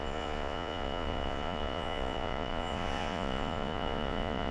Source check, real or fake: fake